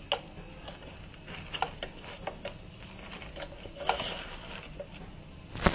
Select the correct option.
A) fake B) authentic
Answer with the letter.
B